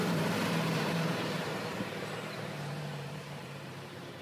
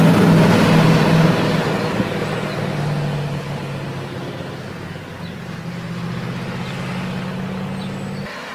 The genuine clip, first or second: second